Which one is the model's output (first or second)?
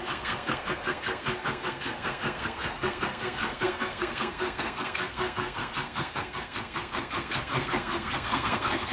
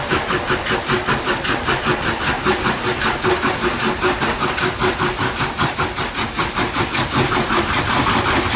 first